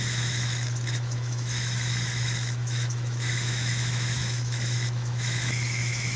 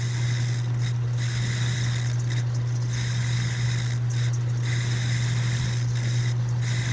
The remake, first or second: first